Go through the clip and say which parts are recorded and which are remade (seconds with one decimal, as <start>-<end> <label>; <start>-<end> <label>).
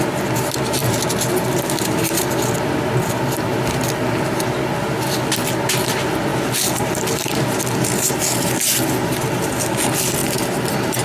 0.0-11.0 recorded